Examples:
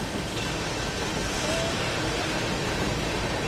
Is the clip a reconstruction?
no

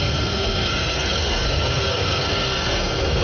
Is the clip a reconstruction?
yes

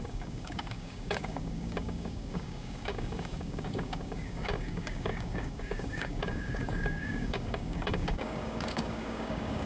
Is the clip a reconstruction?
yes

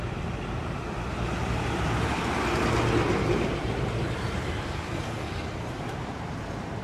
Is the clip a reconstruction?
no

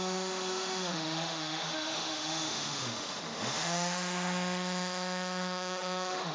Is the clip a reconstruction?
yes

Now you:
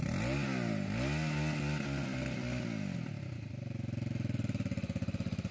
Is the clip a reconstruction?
no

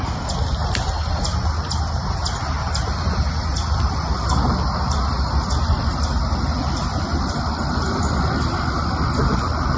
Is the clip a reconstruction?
no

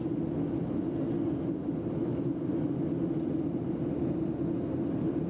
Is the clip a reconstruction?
no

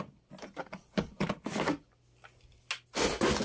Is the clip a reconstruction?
no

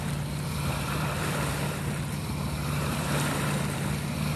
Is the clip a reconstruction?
yes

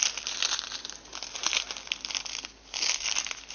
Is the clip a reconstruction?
no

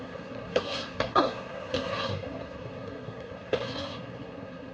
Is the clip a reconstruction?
yes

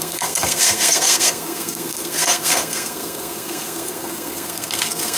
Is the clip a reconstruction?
yes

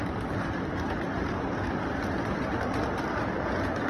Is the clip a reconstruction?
no